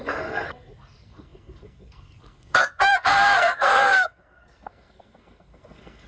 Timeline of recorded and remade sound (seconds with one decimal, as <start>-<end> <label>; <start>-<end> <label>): 0.0-6.1 remade